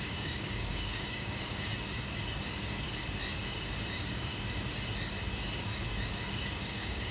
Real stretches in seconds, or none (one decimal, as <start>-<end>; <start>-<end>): 1.7-3.8; 4.3-6.4